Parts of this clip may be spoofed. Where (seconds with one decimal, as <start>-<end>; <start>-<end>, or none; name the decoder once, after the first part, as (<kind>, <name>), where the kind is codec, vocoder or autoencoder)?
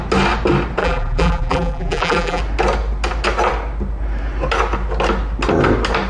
0.8-2.4 (vocoder, BigVGAN v2)